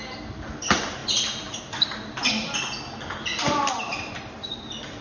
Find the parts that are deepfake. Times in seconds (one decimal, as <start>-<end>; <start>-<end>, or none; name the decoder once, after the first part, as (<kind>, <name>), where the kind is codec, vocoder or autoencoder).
0.0-2.2 (vocoder, BigVGAN v2); 4.0-5.0